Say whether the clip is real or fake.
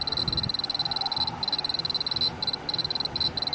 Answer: real